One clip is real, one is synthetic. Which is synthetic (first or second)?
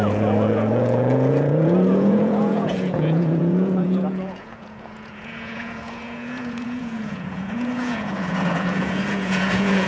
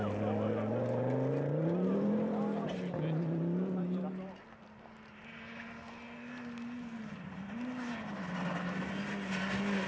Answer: first